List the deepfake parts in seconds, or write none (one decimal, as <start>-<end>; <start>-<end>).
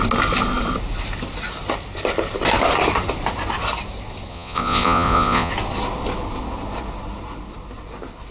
4.3-5.5